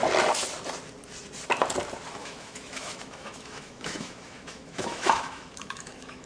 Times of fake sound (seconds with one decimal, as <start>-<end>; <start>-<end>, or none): 2.2-6.3